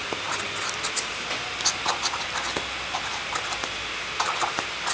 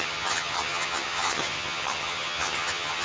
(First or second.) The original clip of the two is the first